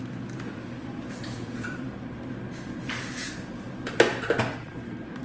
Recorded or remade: remade